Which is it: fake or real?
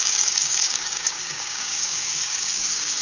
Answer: fake